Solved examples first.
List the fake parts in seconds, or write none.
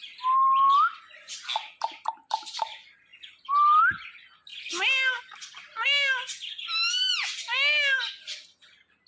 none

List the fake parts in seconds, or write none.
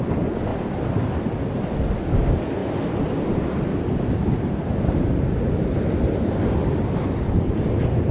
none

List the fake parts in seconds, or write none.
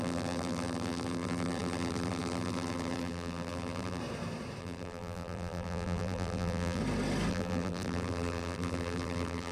0.0-4.0 (vocoder, BigVGAN v2); 4.6-6.8; 7.3-9.5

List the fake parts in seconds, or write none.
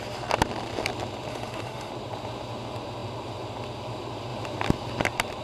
1.3-1.9 (autoencoder, DAC-VAE)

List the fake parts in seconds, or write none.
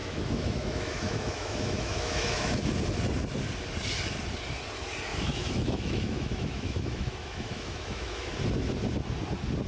0.0-2.6 (autoencoder, DAC-VAE); 5.1-8.3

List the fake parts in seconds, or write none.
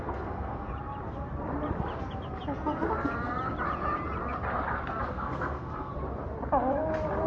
0.0-0.7 (codec, SNAC); 5.1-5.9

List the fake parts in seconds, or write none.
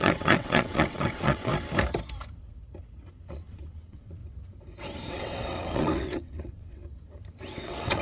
0.0-1.5 (vocoder, WaveNeXt); 3.3-4.2; 5.1-6.8; 7.5-8.0